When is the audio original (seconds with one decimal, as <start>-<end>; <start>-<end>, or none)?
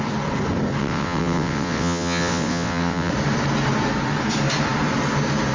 0.0-0.8; 3.1-5.5